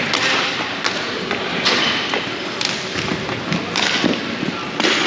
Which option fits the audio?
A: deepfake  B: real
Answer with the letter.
B